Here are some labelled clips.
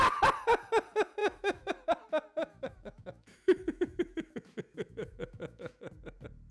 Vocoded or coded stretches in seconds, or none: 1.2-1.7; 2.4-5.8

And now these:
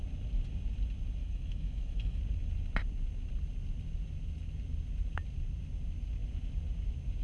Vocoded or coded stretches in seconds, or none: 1.2-2.2

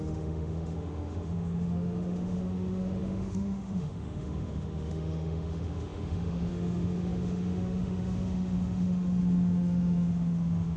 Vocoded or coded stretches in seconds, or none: 0.0-10.8

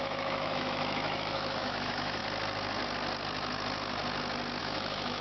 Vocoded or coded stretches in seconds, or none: 0.0-2.2; 4.6-5.2

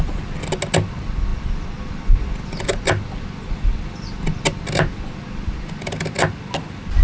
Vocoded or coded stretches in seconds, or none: none

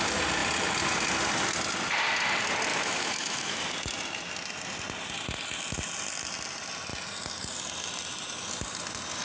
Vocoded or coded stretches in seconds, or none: 2.7-3.6

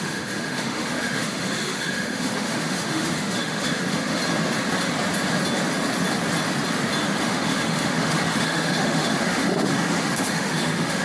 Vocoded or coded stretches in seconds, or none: 0.0-4.2; 7.2-11.0

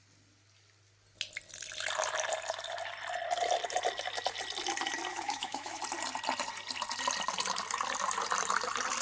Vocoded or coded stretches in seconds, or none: 5.1-5.8